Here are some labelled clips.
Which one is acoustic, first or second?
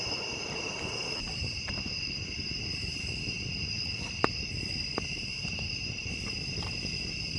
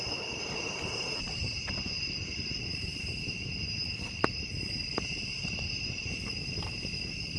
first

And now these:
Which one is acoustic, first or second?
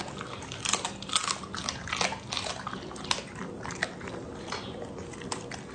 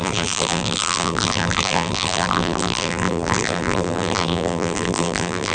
first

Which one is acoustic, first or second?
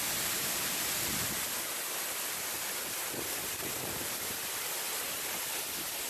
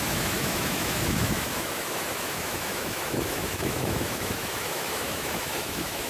first